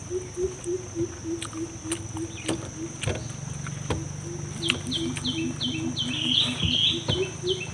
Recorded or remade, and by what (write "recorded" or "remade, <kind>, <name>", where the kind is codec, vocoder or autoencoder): recorded